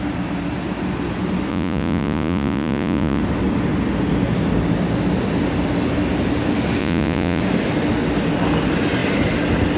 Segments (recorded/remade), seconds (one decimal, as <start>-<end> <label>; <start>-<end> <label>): 0.0-1.5 recorded; 1.5-3.2 remade; 3.2-6.8 recorded; 6.8-7.4 remade; 7.4-9.8 recorded